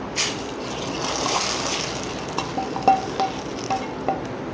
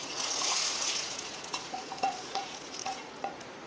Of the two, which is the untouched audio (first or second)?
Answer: first